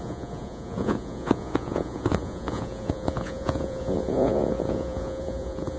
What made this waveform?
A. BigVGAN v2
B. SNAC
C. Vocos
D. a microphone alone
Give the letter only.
C